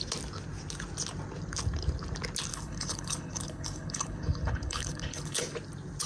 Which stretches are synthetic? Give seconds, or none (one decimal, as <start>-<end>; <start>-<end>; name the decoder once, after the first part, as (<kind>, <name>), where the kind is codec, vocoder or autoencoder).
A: 2.5-5.4 (codec, HILCodec)

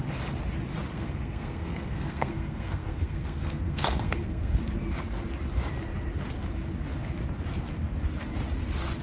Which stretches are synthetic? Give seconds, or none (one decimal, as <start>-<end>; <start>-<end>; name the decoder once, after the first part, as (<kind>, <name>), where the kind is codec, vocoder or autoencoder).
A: 0.9-4.6 (codec, SNAC)

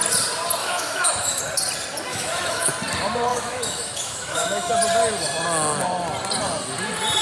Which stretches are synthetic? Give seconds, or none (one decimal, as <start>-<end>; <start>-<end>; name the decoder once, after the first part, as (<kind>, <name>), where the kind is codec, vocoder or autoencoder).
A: 0.6-1.4 (autoencoder, DAC-VAE); 2.1-2.7; 3.3-4.7

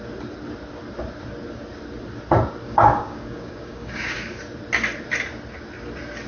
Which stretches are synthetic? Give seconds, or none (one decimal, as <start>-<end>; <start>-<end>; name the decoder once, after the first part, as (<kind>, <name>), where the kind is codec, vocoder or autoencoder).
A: 2.6-4.4 (codec, DAC)

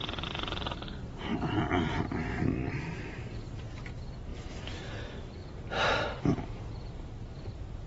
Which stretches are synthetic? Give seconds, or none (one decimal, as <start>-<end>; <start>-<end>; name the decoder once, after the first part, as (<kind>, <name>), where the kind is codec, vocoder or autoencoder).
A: 0.0-1.3 (vocoder, BigVGAN v2); 2.7-4.3; 4.9-7.9